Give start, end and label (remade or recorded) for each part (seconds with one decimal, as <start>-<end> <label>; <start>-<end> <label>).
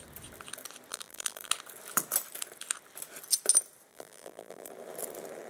0.0-0.9 recorded; 0.9-1.5 remade; 1.5-3.9 recorded; 3.9-4.7 remade; 4.7-5.5 recorded